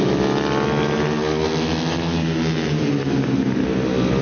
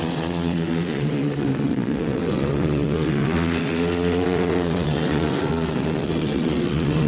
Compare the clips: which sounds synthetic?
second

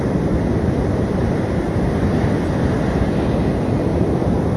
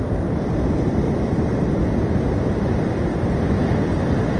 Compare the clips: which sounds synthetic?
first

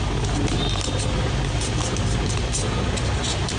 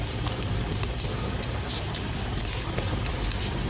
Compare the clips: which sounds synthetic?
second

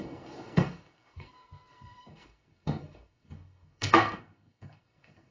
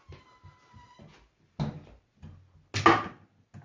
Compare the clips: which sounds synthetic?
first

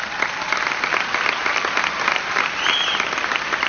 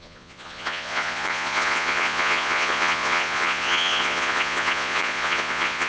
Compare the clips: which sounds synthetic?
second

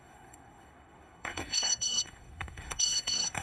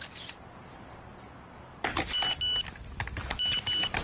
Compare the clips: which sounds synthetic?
first